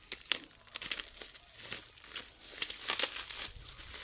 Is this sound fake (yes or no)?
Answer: no